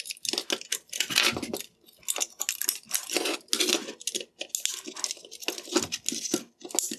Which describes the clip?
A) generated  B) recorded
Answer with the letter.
B